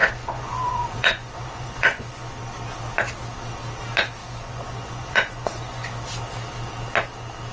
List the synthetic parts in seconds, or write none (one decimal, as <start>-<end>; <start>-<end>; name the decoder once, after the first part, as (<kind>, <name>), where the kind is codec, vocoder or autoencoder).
0.0-2.3 (vocoder, Vocos); 4.2-5.9